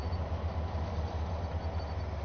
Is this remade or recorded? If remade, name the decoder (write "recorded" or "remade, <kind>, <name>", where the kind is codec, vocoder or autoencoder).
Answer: recorded